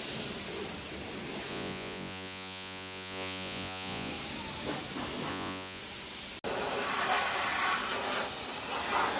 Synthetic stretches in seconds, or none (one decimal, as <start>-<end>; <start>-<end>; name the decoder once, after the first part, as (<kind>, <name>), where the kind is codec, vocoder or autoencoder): 1.5-4.1 (vocoder, Vocos); 5.3-5.8